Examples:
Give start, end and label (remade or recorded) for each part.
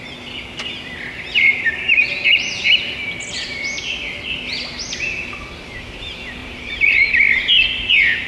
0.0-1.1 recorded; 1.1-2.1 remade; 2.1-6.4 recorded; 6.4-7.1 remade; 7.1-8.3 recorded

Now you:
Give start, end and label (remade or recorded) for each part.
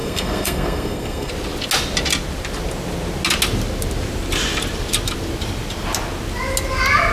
0.0-1.3 remade; 1.3-7.1 recorded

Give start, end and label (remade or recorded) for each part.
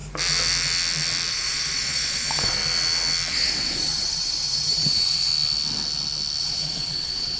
0.0-1.3 recorded; 1.3-2.6 remade; 2.6-3.3 recorded; 3.3-5.3 remade; 5.3-6.4 recorded; 6.4-7.4 remade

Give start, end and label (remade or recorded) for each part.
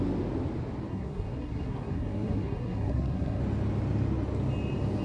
0.0-0.9 recorded; 0.9-3.4 remade; 3.4-5.0 recorded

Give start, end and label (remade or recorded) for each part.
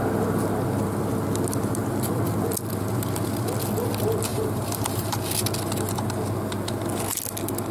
0.0-4.3 recorded; 4.3-5.2 remade; 5.2-7.7 recorded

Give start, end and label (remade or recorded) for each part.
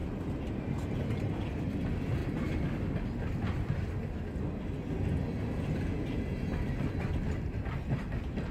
0.0-8.5 recorded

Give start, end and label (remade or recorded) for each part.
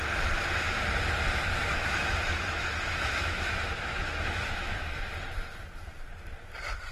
0.0-1.7 recorded; 1.7-5.1 remade; 5.1-6.9 recorded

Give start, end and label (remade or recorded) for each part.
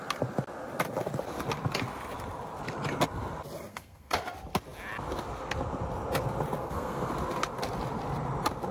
0.0-3.7 recorded; 3.7-4.2 remade; 4.2-6.6 recorded; 6.6-7.1 remade; 7.1-8.7 recorded